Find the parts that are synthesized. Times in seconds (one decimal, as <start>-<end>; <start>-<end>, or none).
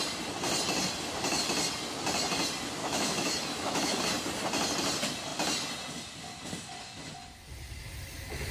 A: 2.8-4.0